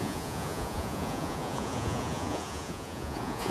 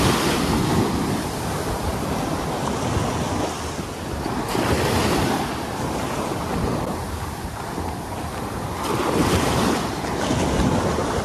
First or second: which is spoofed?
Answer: first